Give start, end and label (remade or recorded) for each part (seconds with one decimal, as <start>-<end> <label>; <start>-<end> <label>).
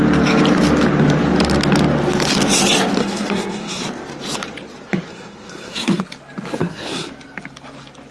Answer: 0.0-3.0 recorded; 3.0-3.8 remade; 3.8-5.1 recorded; 5.1-6.0 remade; 6.0-6.6 recorded; 6.6-7.1 remade; 7.1-8.1 recorded